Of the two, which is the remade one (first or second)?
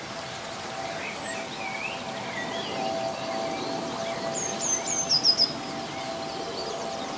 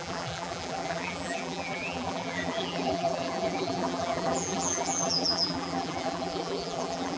second